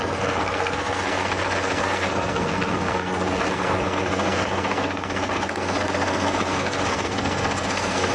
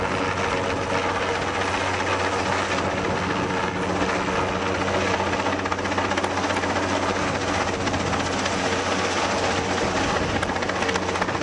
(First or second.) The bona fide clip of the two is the second